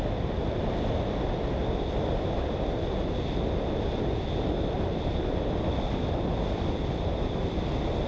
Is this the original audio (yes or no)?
yes